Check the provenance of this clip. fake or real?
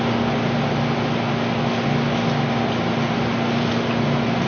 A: real